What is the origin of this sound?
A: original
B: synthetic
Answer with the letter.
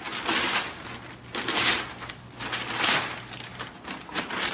A